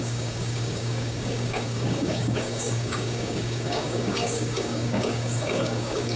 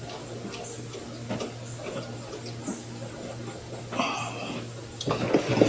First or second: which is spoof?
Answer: first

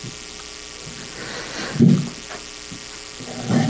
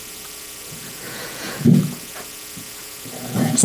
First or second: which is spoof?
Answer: second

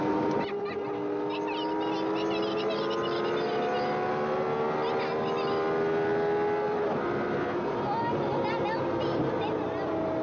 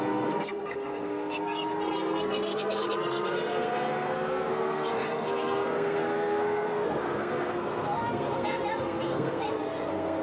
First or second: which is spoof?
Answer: second